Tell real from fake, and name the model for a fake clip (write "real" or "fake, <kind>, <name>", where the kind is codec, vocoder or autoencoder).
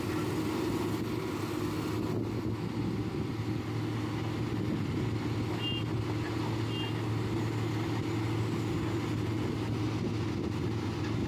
real